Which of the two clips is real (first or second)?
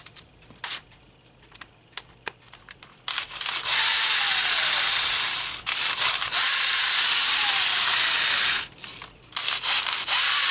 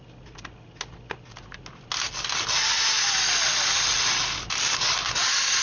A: second